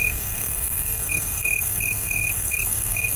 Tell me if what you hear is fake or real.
fake